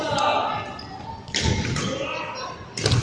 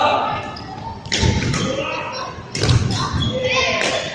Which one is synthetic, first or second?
second